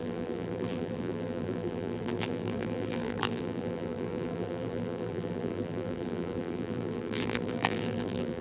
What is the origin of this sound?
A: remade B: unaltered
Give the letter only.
A